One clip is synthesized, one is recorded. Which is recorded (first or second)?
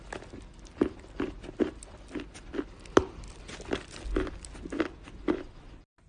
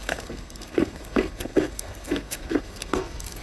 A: first